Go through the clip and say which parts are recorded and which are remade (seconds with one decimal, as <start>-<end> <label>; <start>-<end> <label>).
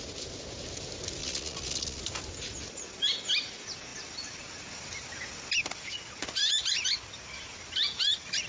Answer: 0.0-1.2 recorded; 1.2-2.0 remade; 2.0-8.5 recorded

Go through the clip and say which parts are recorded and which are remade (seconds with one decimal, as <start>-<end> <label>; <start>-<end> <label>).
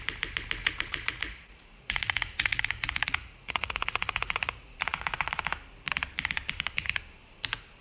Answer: 0.0-0.6 recorded; 0.6-5.3 remade; 5.3-7.8 recorded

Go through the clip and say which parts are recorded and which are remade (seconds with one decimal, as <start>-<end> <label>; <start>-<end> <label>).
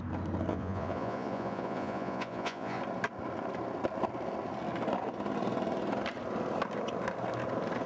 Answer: 0.0-0.5 recorded; 0.5-2.8 remade; 2.8-7.9 recorded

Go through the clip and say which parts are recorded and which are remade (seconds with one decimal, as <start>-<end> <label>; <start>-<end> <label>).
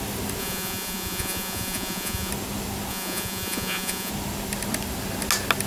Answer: 0.0-0.4 recorded; 0.4-2.3 remade; 2.3-2.9 recorded; 2.9-4.1 remade; 4.1-5.7 recorded